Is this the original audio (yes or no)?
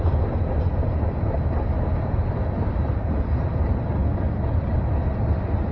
yes